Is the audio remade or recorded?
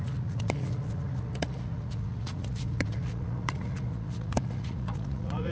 remade